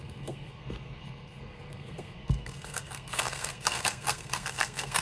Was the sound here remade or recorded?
remade